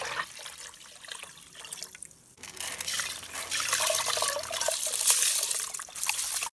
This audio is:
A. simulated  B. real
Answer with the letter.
B